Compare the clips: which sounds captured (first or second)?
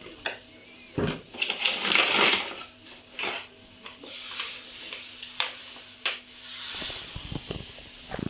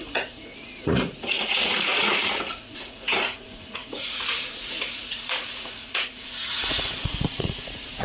first